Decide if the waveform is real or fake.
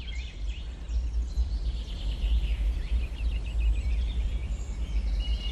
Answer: fake